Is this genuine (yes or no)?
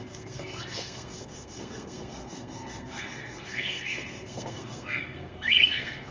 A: no